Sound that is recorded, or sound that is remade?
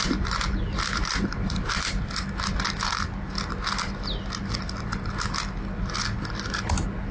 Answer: recorded